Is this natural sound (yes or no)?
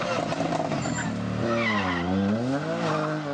yes